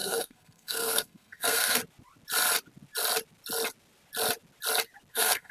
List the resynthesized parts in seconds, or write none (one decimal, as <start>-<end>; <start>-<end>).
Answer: 0.0-1.8; 5.1-5.5

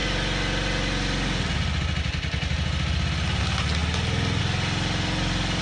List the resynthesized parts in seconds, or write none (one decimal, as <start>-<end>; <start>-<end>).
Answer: none

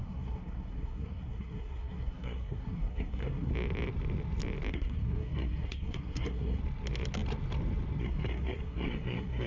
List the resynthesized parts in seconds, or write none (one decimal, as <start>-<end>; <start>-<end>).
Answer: 0.0-3.5; 4.7-6.6; 8.0-9.5

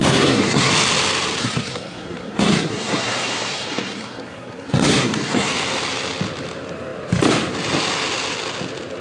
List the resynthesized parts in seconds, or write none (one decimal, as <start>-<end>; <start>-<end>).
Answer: 0.0-0.7; 1.4-5.5

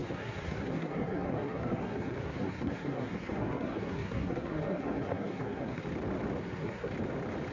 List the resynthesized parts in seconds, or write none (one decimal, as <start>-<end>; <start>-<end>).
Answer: 0.0-5.8; 6.4-6.9

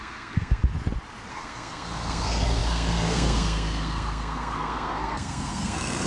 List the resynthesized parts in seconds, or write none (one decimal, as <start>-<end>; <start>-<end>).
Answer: 0.0-0.6; 1.3-6.1